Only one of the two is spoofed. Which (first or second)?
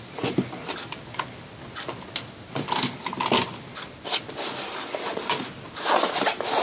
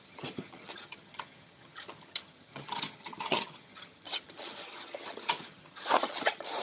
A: second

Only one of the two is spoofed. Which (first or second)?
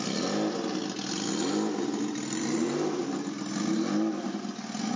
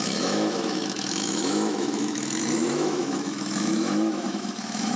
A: second